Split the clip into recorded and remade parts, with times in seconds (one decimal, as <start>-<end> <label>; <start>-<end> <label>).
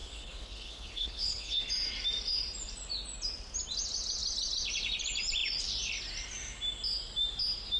0.0-1.7 remade; 1.7-7.8 recorded